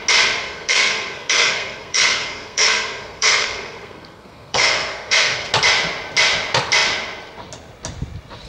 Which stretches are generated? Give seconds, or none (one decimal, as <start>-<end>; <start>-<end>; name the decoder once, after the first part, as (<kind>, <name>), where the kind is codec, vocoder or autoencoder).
0.4-5.5 (codec, SNAC)